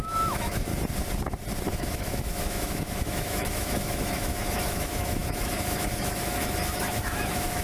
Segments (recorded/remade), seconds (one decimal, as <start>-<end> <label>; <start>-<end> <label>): 0.0-0.7 remade; 0.7-1.7 recorded; 1.7-7.6 remade